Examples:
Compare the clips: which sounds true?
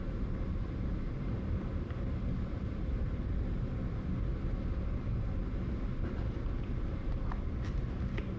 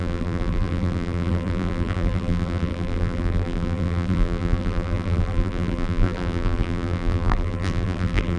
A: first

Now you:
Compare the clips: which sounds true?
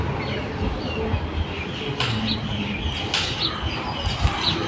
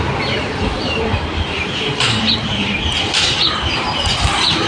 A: first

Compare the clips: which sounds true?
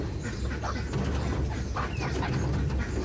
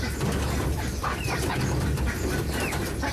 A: first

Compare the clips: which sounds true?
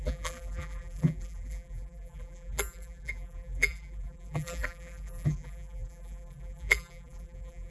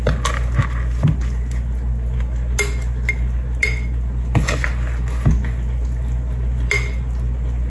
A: second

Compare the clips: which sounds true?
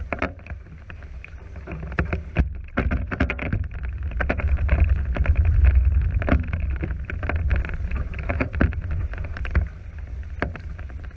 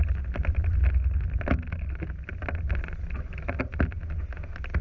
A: second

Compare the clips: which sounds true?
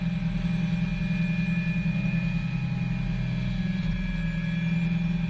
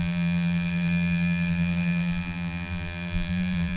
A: first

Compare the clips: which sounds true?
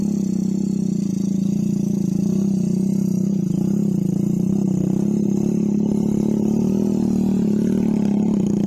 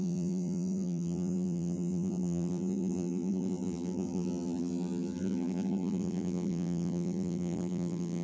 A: first